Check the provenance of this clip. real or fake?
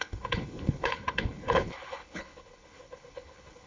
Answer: fake